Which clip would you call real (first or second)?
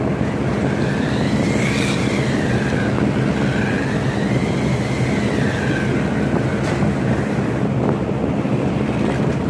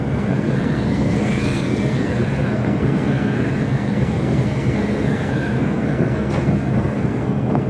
first